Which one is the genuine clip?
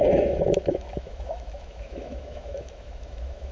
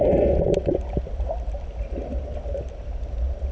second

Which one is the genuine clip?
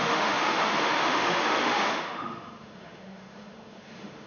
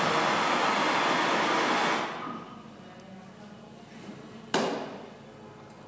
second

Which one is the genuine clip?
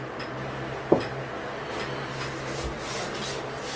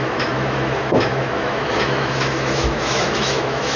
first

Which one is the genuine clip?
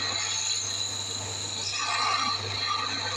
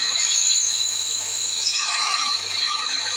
first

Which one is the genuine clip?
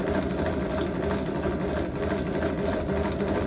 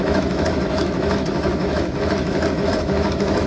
first